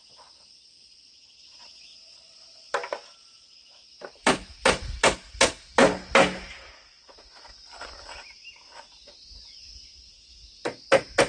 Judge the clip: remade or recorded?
recorded